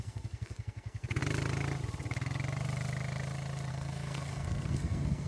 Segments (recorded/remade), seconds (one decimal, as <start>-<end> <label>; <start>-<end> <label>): 0.0-1.2 remade; 1.2-3.7 recorded; 3.7-5.3 remade